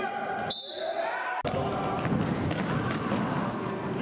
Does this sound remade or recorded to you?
recorded